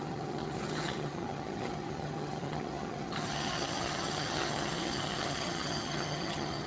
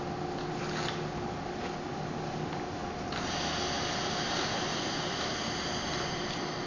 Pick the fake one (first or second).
first